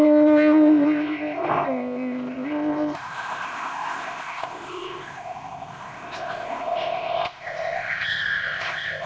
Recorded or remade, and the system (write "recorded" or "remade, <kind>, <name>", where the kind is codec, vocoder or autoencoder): remade, codec, ZipCodec